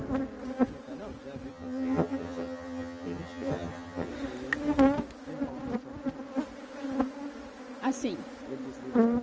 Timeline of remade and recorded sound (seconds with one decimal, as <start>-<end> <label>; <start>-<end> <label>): 0.0-1.5 recorded; 1.5-4.1 remade; 4.1-9.2 recorded